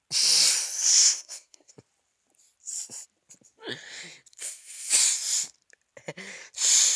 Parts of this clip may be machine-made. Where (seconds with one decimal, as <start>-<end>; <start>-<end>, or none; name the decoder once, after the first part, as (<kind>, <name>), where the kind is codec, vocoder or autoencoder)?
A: 0.9-1.7 (codec, SNAC); 4.3-4.9